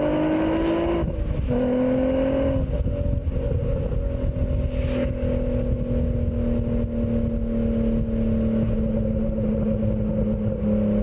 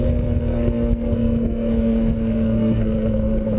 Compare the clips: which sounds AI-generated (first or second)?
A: second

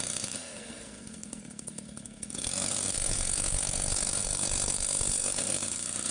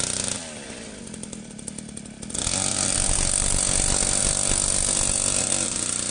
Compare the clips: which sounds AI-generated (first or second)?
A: first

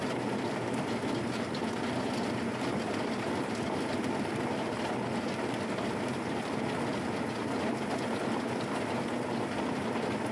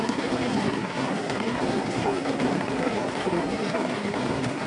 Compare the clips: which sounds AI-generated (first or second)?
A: second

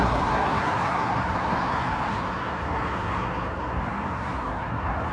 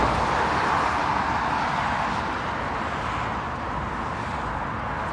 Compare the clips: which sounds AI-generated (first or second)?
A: first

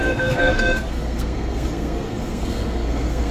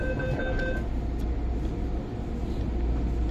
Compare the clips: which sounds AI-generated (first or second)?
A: first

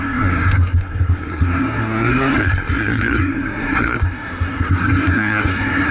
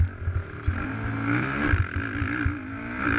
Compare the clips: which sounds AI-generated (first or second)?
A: first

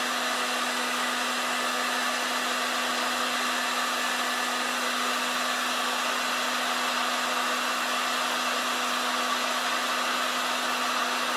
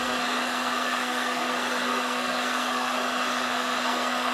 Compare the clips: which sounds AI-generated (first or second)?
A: second